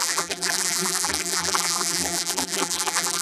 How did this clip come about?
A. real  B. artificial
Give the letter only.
B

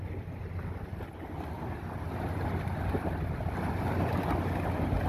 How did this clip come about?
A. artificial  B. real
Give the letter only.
B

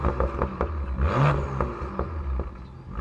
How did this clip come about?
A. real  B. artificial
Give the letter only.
A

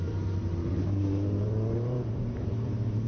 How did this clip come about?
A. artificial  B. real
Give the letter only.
A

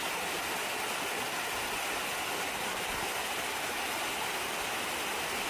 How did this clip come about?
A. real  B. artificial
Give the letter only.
A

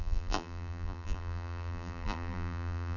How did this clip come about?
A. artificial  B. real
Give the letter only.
A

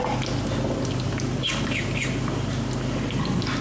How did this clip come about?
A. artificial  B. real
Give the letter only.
B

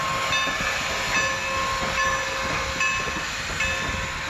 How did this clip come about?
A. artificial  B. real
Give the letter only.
B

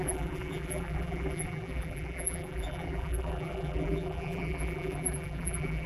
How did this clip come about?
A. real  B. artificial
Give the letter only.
B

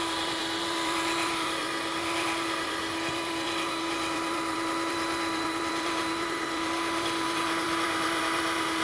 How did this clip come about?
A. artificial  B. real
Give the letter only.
A